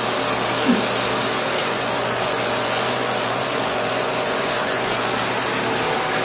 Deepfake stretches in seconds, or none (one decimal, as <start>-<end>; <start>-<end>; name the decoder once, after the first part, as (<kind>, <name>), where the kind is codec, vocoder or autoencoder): 1.6-5.1 (vocoder, Vocos)